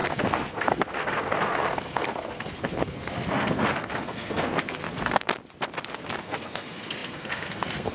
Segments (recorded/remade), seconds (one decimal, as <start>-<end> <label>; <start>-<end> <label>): 0.0-5.3 remade; 5.3-6.2 recorded; 6.2-7.9 remade